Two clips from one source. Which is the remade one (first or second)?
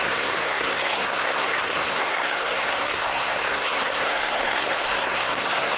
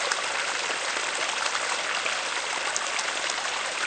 first